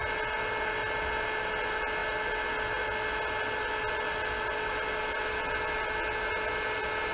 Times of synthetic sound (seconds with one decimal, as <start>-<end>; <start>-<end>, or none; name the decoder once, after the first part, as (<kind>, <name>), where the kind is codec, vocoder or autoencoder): none